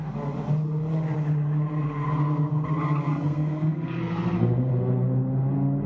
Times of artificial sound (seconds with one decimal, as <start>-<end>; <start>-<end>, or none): 3.1-4.7